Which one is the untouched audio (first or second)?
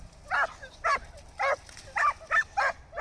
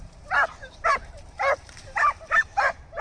first